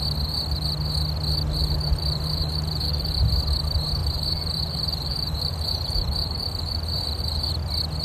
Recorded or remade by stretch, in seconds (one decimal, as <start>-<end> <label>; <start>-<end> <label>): 0.0-1.6 recorded; 1.6-3.2 remade; 3.2-4.0 recorded; 4.0-7.5 remade; 7.5-8.0 recorded